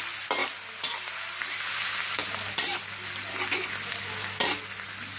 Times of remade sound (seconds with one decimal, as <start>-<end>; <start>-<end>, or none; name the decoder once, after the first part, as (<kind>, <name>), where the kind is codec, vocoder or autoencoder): none